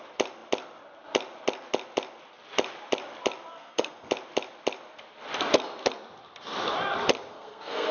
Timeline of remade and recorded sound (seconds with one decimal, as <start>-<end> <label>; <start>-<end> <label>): 0.0-3.5 recorded; 3.5-4.1 remade; 4.1-7.3 recorded; 7.3-7.9 remade